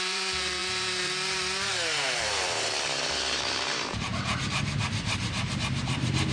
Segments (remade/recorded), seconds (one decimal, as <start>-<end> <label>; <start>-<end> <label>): 0.0-6.3 remade

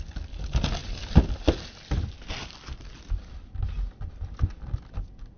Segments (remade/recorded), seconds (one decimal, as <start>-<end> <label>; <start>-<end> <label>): 0.0-5.4 recorded

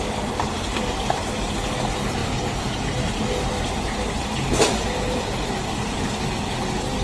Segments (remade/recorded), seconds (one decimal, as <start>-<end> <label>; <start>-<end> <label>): 0.0-2.2 remade; 2.2-3.3 recorded; 3.3-7.0 remade